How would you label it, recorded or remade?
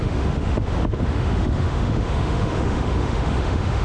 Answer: remade